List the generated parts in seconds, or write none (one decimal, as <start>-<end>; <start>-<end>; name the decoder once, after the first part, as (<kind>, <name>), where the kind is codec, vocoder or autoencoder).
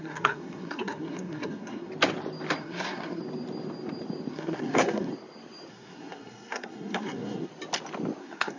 0.0-1.9 (codec, SNAC); 2.6-3.2; 4.3-5.1; 5.7-7.5; 8.2-8.6